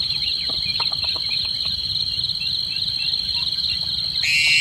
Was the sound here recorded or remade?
recorded